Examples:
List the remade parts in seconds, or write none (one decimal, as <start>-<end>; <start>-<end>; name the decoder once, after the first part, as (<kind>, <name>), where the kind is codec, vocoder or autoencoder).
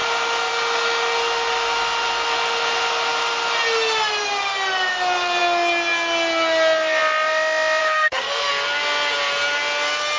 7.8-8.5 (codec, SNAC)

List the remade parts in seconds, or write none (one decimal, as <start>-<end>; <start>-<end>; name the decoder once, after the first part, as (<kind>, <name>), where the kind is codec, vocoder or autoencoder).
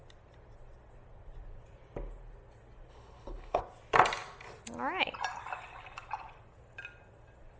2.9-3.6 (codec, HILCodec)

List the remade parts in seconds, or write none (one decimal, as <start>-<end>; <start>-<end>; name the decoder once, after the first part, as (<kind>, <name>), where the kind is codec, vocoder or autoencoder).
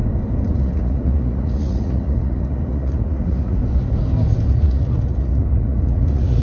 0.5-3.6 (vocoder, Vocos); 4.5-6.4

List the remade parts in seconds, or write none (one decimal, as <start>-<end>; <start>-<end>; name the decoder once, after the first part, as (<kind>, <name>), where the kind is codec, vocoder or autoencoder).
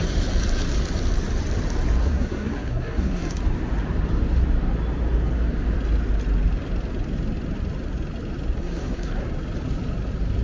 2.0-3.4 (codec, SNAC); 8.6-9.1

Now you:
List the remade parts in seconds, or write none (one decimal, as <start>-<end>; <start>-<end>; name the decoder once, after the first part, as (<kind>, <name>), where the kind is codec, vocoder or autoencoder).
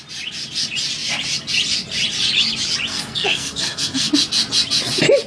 2.9-4.1 (codec, SNAC)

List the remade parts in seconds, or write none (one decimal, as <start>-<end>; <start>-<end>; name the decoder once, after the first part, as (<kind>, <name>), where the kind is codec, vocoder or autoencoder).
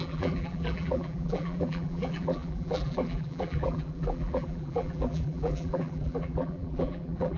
0.0-7.4 (vocoder, BigVGAN v2)